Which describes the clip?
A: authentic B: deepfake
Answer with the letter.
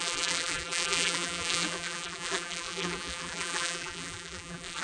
B